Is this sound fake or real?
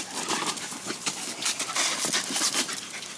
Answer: real